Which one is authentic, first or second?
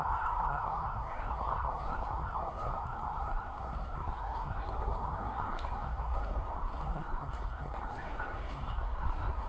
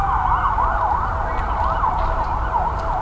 second